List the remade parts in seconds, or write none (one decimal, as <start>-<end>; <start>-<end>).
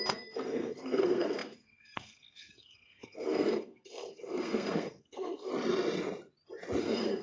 0.0-5.5; 6.8-7.2